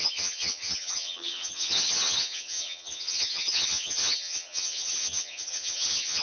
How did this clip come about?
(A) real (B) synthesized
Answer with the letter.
B